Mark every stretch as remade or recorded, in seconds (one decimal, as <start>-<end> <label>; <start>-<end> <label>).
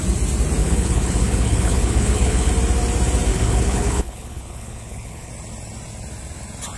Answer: 0.0-0.6 recorded; 0.6-2.5 remade; 2.5-3.3 recorded; 3.3-5.3 remade; 5.3-6.8 recorded